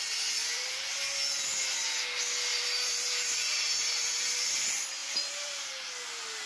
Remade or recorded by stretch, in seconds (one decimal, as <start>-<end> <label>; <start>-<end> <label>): 0.0-0.4 recorded; 0.4-0.9 remade; 0.9-2.5 recorded; 2.5-4.5 remade; 4.5-5.0 recorded; 5.0-5.7 remade; 5.7-6.5 recorded